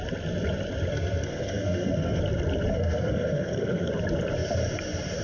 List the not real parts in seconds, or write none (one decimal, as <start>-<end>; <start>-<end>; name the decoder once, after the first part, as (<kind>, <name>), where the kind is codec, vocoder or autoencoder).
0.9-2.2 (codec, SNAC); 2.7-3.9

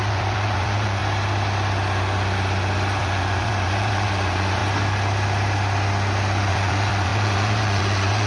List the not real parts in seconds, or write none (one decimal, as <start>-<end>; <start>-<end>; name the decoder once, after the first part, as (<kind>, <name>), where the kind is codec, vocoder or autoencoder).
0.0-1.0 (vocoder, Vocos); 3.0-4.6; 6.5-8.3

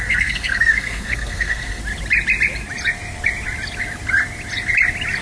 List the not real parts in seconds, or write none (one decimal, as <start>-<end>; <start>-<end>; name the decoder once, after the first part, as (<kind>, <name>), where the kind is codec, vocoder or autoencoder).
0.0-1.8 (codec, SNAC)

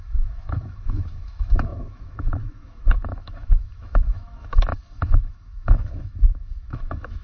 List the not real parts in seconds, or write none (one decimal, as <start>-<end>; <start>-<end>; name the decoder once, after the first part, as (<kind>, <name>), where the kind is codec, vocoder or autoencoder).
0.0-7.2 (autoencoder, DAC-VAE)

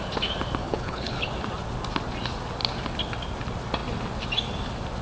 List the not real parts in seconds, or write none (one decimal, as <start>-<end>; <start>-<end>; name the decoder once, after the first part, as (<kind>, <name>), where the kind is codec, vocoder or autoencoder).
0.6-1.3 (codec, HILCodec)

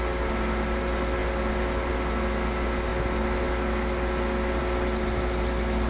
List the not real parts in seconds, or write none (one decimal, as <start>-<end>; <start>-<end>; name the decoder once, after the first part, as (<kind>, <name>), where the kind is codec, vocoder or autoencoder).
none

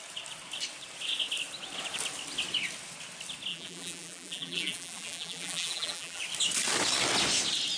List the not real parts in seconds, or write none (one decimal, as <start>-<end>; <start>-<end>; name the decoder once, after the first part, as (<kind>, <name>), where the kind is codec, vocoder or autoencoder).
3.5-6.2 (vocoder, BigVGAN v2)